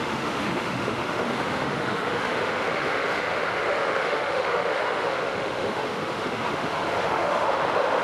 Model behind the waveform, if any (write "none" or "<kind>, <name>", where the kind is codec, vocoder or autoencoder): autoencoder, DAC-VAE